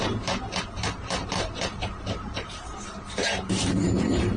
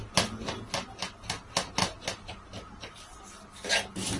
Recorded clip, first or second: second